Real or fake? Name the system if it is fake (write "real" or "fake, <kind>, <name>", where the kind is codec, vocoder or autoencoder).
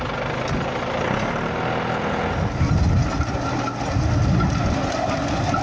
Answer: real